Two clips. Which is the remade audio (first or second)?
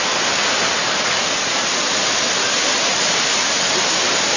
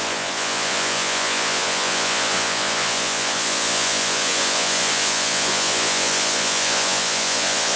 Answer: second